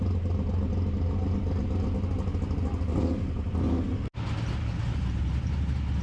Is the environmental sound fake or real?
real